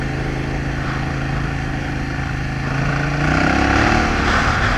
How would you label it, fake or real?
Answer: real